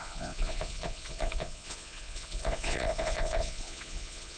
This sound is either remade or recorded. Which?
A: remade